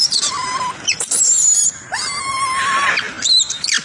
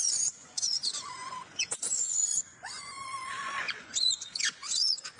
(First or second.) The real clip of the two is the first